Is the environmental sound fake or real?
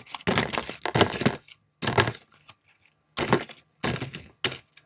real